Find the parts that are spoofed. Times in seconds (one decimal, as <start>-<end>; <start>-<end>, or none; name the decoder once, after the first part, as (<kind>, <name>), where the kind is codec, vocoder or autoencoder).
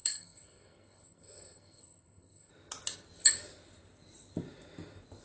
0.0-2.5 (codec, SNAC)